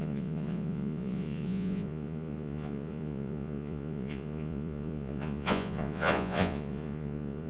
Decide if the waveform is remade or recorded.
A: remade